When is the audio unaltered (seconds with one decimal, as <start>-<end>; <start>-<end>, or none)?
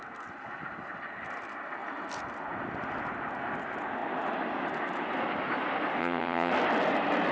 0.0-6.0; 6.5-7.3